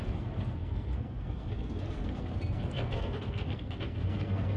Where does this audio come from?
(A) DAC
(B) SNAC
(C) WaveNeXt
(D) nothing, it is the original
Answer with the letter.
B